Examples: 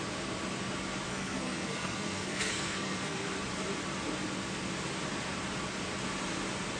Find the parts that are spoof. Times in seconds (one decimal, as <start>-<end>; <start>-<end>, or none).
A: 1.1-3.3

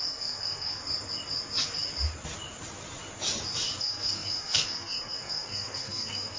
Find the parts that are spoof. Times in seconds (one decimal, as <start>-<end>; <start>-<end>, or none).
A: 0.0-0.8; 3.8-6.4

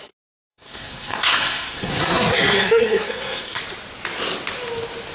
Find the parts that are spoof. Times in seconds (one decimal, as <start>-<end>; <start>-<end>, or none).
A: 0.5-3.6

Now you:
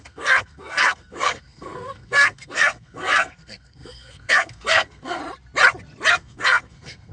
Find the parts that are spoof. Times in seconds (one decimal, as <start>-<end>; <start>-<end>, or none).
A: 0.0-5.2; 6.1-7.1

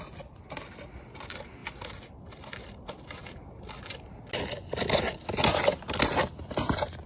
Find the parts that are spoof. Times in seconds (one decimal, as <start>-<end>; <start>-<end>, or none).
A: none

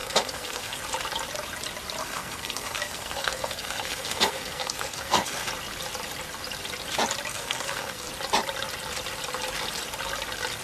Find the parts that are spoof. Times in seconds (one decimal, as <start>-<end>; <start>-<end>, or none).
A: 0.0-0.8; 2.0-5.5; 7.3-8.1

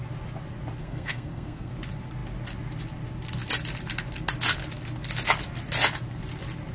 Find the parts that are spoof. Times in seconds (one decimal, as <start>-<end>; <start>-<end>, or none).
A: 0.8-1.7